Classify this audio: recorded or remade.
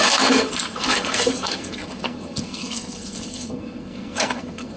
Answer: remade